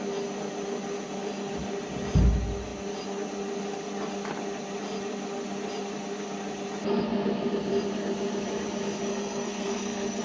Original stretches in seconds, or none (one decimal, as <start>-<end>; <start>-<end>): 0.0-9.1